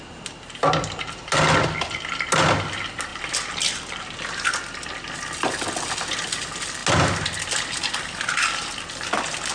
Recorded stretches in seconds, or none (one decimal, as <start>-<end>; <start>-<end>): 0.0-3.1; 4.5-9.5